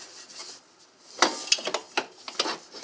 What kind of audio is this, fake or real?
real